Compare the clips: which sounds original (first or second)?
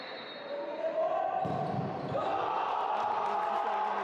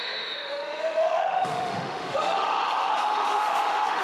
first